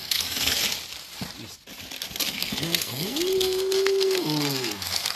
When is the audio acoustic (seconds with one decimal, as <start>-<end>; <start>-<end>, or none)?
0.6-2.3